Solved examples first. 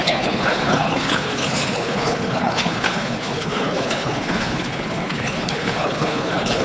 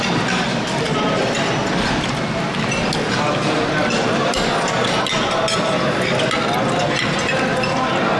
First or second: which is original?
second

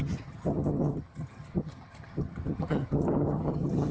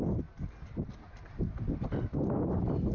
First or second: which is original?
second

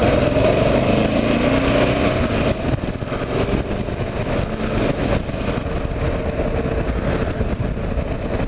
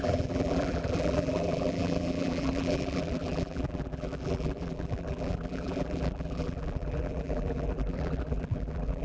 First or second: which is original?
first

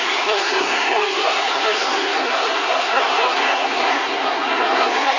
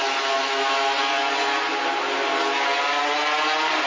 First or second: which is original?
second